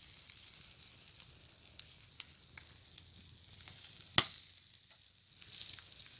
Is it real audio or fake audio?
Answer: real